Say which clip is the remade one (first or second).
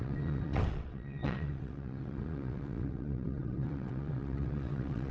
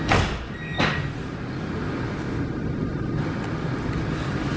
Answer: first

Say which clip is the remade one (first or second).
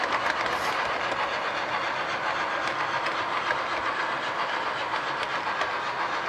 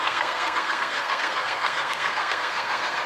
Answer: second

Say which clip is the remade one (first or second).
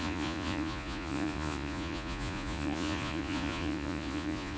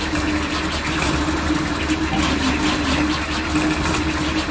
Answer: first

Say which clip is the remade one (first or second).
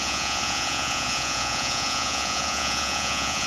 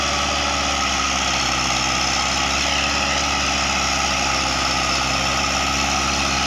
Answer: first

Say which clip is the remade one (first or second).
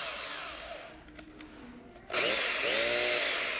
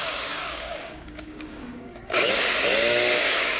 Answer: second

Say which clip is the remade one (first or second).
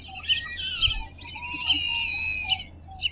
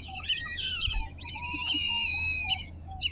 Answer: second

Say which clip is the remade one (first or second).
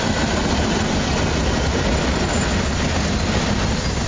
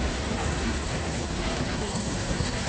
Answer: second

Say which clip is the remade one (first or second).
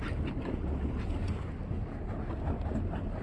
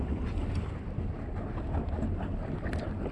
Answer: second